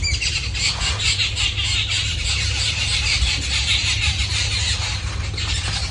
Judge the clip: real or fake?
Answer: real